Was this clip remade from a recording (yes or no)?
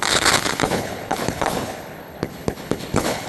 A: yes